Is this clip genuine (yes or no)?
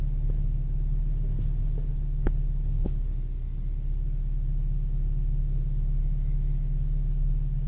yes